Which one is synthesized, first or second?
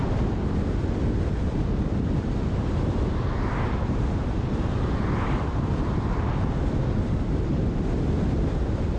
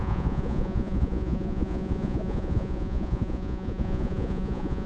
second